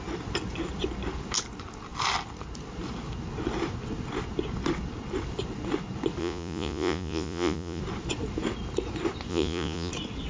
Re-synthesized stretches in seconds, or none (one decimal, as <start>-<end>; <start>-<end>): 6.2-7.8; 9.3-9.9